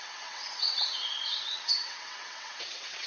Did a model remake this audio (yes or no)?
yes